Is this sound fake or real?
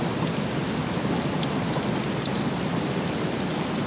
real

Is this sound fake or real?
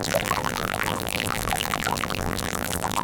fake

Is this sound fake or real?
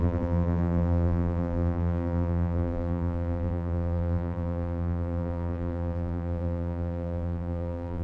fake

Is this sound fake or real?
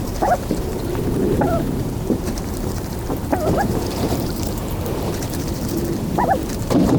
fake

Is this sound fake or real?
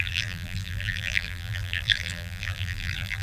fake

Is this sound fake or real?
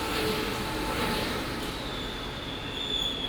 real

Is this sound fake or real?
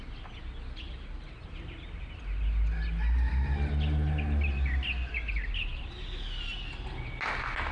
real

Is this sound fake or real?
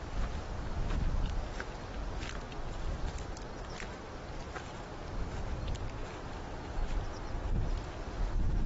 real